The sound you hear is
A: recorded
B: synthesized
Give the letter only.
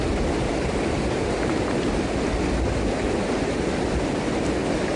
A